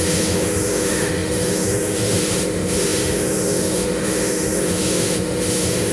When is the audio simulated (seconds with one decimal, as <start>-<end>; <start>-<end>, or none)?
0.0-5.9